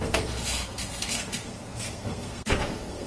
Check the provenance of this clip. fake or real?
fake